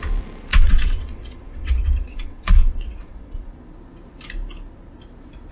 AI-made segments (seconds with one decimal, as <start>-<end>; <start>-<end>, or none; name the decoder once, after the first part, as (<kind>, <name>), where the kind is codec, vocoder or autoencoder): 0.5-3.5 (vocoder, WaveNeXt)